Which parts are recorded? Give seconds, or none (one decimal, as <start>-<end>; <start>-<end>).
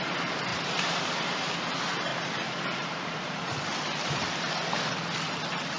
0.0-0.5; 1.5-2.1; 4.5-5.8